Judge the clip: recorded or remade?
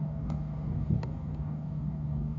remade